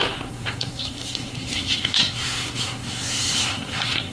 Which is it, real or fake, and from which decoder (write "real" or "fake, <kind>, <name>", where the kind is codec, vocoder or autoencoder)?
fake, codec, SNAC